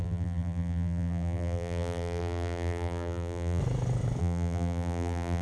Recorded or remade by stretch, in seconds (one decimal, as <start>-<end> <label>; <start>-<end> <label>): 0.0-3.6 remade; 3.6-4.2 recorded; 4.2-5.4 remade